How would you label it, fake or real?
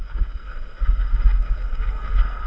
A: fake